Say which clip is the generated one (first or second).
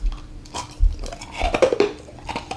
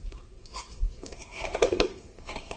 second